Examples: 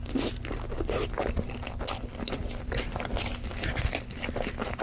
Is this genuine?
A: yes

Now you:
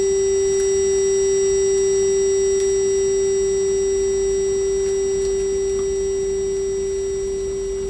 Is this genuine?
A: yes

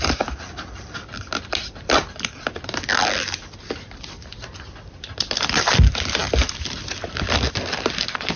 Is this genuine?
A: no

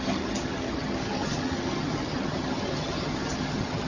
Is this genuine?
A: no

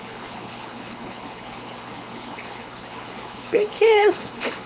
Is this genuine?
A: no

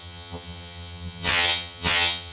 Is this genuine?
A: no